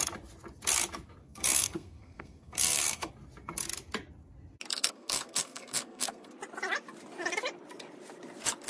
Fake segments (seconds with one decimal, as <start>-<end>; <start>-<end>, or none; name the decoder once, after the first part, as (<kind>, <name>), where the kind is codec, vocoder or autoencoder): 1.2-3.1 (codec, SNAC); 4.7-6.3